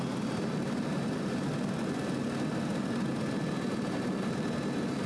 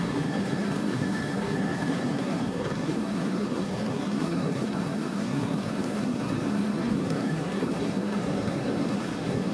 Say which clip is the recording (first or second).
first